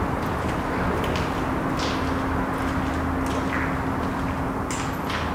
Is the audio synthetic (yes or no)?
no